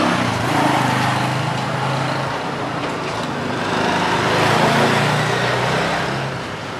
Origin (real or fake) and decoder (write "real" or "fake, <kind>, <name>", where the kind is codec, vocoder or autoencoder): real